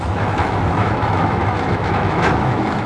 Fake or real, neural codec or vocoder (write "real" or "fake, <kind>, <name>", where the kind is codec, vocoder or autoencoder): fake, autoencoder, DAC-VAE